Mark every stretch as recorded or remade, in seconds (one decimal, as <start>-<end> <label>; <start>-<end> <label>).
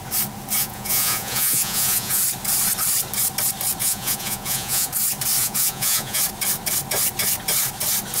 0.0-0.6 recorded; 0.6-2.2 remade; 2.2-3.8 recorded; 3.8-4.9 remade; 4.9-5.4 recorded; 5.4-6.2 remade; 6.2-8.2 recorded